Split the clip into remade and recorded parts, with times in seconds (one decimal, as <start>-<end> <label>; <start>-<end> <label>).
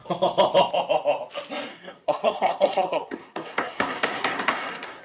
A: 0.0-1.7 recorded; 1.7-5.0 remade